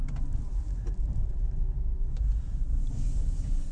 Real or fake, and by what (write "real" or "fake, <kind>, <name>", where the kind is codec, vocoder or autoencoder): fake, vocoder, BigVGAN v2